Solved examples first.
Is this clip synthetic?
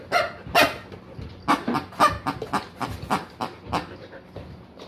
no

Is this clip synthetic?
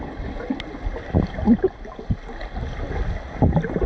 no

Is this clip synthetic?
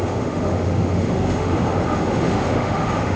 yes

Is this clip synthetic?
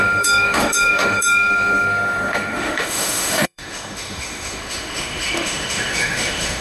yes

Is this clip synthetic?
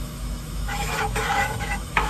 yes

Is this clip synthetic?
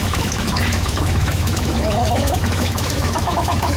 yes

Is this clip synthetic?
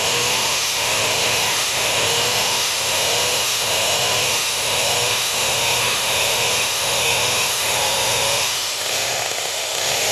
yes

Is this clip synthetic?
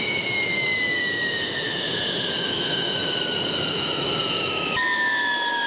yes